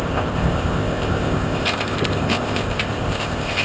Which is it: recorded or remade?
remade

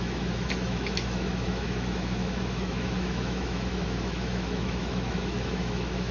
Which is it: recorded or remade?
remade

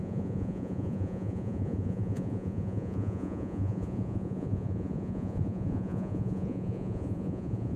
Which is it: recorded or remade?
remade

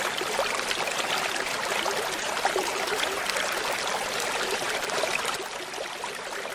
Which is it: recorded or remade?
remade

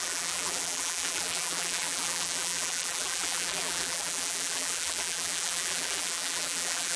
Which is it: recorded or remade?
remade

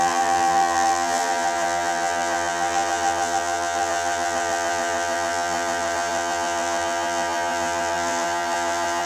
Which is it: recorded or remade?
remade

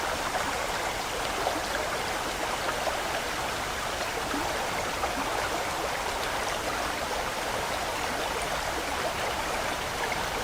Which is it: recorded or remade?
remade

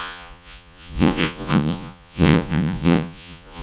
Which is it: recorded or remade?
remade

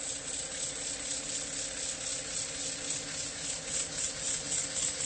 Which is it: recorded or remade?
recorded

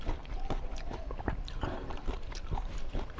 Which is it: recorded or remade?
remade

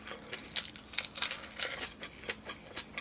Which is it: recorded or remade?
recorded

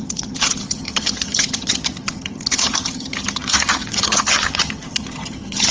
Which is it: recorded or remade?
remade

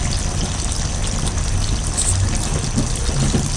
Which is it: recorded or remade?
recorded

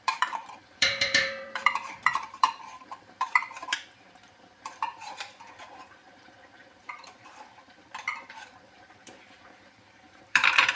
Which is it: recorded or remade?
remade